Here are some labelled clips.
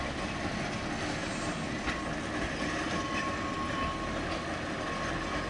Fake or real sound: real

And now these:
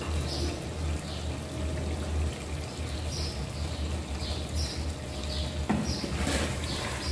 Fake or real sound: real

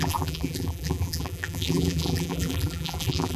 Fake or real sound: fake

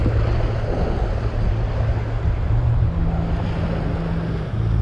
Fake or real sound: real